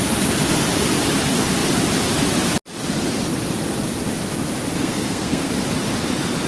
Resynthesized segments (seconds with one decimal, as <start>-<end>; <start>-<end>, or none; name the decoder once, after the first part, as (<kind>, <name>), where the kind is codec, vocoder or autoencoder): 4.7-5.5 (codec, SNAC)